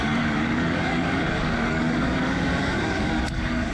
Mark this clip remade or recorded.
remade